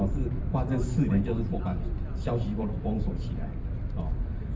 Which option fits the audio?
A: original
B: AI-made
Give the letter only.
B